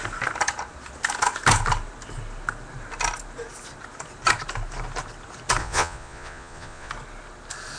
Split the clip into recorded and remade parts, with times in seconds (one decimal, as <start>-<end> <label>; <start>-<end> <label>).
0.0-5.6 recorded; 5.6-6.9 remade; 6.9-7.8 recorded